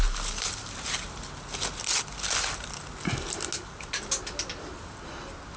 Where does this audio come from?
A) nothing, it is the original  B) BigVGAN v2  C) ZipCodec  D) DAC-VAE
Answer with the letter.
A